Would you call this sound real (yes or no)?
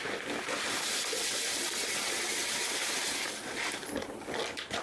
yes